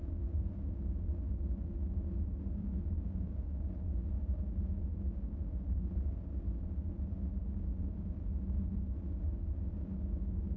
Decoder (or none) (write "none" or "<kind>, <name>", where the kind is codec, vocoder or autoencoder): none